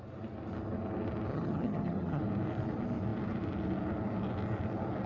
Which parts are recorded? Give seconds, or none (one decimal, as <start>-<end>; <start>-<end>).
0.0-1.3; 2.2-5.1